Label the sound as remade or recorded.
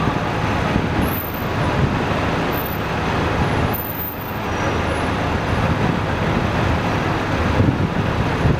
recorded